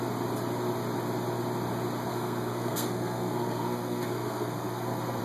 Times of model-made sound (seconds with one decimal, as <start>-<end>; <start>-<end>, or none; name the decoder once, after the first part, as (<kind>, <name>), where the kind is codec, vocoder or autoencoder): 2.1-5.2 (codec, SNAC)